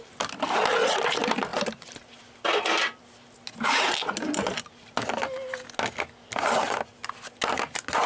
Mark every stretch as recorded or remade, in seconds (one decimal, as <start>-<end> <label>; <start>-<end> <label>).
0.0-8.1 recorded